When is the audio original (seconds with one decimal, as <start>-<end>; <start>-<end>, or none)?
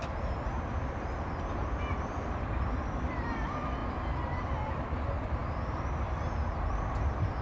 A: 3.8-4.4; 5.4-6.5